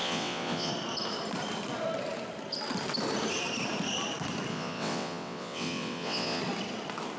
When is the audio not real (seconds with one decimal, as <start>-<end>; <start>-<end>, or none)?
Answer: 0.0-0.7; 4.5-6.4